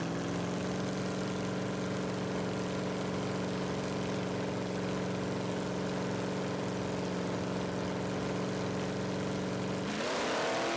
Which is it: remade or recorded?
recorded